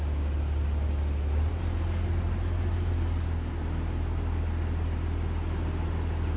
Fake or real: real